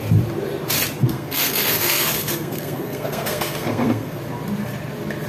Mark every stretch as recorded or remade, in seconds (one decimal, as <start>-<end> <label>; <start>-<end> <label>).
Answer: 0.0-1.0 recorded; 1.0-4.2 remade; 4.2-5.3 recorded